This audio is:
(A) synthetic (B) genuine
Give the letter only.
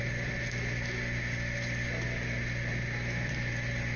B